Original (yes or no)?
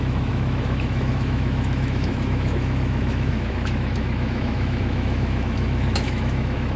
no